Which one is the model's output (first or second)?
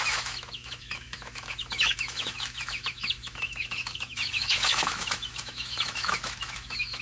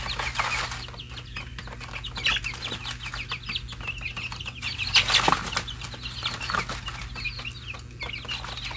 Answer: first